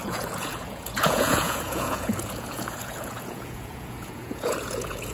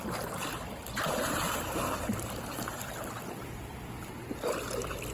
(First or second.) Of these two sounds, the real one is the second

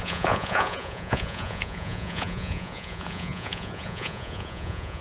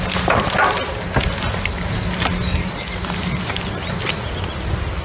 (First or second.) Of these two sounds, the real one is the second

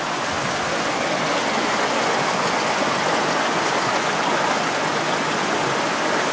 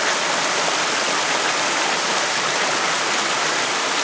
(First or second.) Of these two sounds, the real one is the second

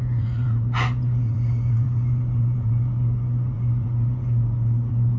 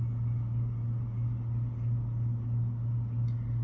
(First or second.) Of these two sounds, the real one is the second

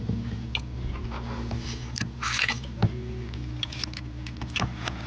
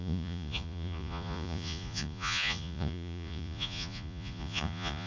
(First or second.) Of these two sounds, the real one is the first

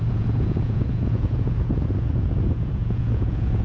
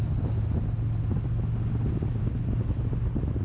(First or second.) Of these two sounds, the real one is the second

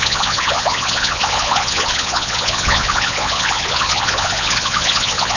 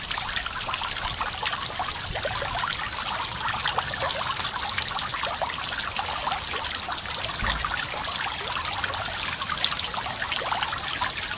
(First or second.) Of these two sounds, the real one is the second